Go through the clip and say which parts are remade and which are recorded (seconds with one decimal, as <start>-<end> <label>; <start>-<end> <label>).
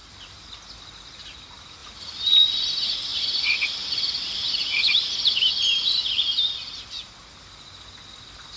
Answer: 0.0-3.1 recorded; 3.1-7.1 remade; 7.1-8.6 recorded